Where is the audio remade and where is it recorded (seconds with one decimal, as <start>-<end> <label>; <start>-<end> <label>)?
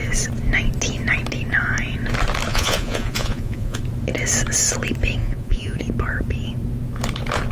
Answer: 0.0-2.5 recorded; 2.5-3.8 remade; 3.8-5.2 recorded; 5.2-5.8 remade; 5.8-7.5 recorded